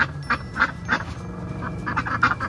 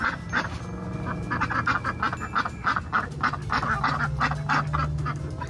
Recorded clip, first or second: second